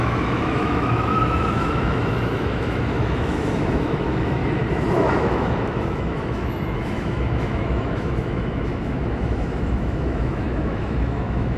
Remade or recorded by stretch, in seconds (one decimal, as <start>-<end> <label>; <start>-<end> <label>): 0.0-4.4 remade; 4.4-5.0 recorded; 5.0-11.6 remade